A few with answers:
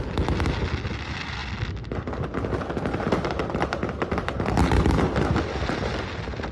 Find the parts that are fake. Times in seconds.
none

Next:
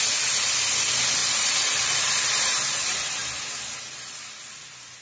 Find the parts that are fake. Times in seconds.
1.2-2.2

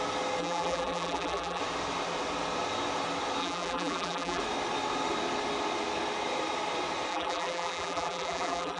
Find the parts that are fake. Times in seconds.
0.4-1.6; 3.4-4.4; 7.1-8.8

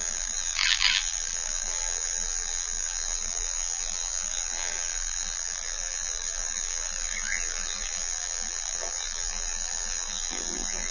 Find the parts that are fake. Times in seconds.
0.0-10.9

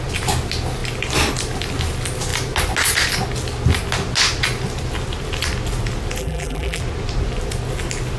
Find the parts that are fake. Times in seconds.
6.2-6.8

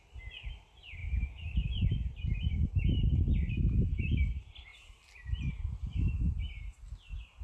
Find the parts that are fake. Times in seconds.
none

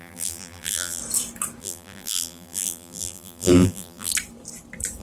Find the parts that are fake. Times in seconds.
0.0-1.0; 1.6-4.1

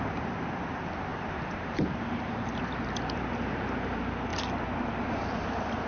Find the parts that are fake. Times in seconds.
1.1-2.6